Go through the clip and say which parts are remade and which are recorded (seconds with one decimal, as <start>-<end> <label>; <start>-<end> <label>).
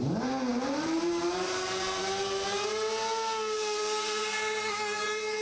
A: 0.0-2.5 remade; 2.5-4.2 recorded; 4.2-5.4 remade